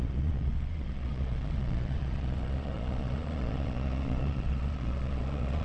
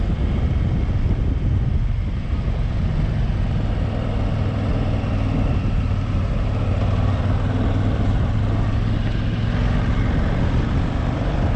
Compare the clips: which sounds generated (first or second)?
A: first